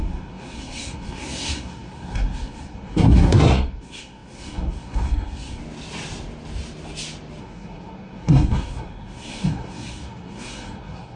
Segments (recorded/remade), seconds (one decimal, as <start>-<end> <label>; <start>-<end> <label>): 0.0-5.6 remade; 5.6-7.4 recorded; 7.4-11.2 remade

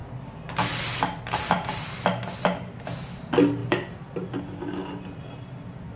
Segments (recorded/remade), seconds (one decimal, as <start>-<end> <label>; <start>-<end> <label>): 0.0-6.0 recorded

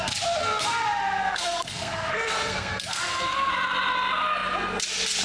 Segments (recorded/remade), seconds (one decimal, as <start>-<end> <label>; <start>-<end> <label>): 0.0-0.4 recorded; 0.4-3.5 remade; 3.5-5.2 recorded